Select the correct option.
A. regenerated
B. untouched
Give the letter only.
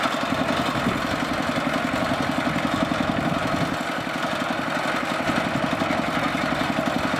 B